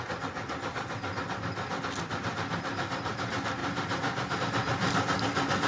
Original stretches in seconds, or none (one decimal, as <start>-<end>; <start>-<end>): 0.0-3.6; 4.4-5.7